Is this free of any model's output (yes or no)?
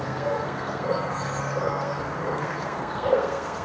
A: no